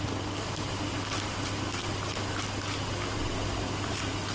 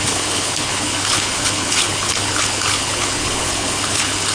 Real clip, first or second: first